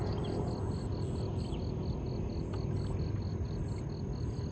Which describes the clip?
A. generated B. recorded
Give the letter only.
B